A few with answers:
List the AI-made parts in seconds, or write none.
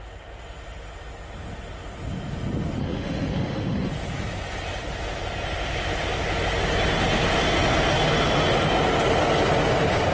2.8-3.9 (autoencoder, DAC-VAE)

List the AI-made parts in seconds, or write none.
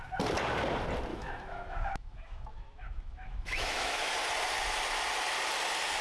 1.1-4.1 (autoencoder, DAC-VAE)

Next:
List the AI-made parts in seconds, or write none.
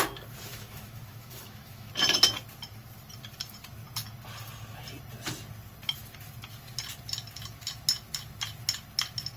0.5-1.9 (autoencoder, DAC-VAE)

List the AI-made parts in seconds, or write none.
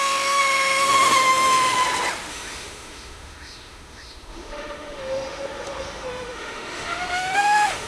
0.0-1.8 (autoencoder, DAC-VAE); 2.3-7.9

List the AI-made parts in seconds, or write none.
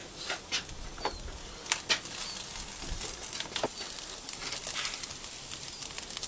none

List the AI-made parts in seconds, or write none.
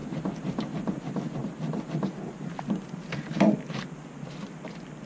none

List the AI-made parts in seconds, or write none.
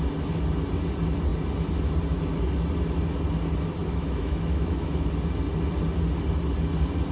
3.8-5.1 (autoencoder, DAC-VAE)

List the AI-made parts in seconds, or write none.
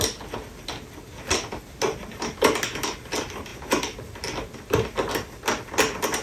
none